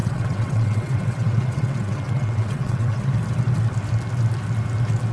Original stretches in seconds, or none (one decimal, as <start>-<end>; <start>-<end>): 3.1-5.1